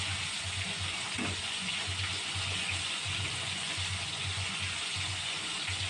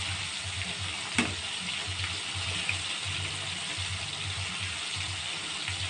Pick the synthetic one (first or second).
first